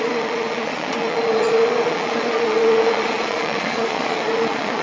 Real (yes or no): no